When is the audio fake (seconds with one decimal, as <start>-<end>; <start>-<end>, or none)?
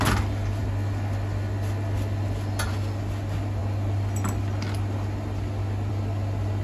none